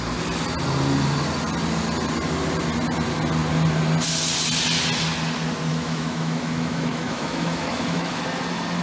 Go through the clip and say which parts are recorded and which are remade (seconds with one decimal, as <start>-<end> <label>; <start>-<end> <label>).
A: 0.0-5.7 recorded; 5.7-8.2 remade; 8.2-8.8 recorded